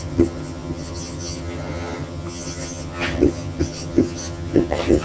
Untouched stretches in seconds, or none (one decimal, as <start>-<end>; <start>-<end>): none